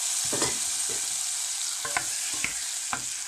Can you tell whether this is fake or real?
real